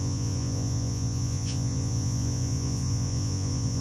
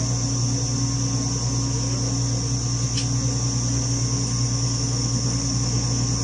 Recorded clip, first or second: second